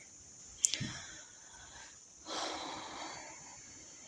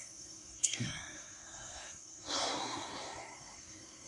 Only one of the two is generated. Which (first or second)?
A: second